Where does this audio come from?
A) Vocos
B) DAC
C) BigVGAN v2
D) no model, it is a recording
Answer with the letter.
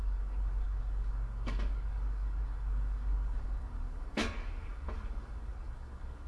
B